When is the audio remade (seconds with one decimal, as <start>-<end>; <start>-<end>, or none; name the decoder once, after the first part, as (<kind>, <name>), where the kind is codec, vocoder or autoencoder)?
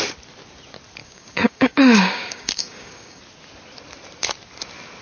1.0-3.2 (codec, DAC)